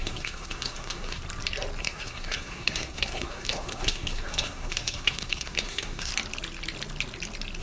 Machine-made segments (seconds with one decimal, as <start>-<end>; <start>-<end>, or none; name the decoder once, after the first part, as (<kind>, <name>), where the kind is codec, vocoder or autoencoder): 0.0-1.2 (codec, SNAC); 1.8-6.1